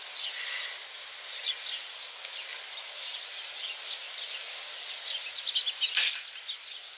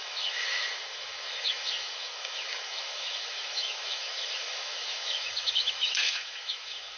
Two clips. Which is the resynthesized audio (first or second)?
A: second